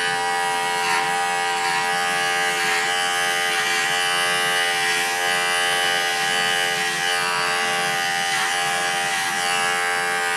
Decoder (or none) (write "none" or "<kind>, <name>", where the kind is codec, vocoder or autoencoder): none